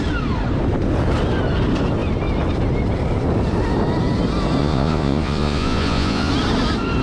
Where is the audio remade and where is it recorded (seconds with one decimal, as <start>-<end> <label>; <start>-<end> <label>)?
0.0-4.6 recorded; 4.6-6.3 remade; 6.3-7.0 recorded